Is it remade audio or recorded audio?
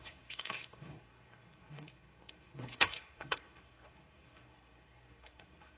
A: remade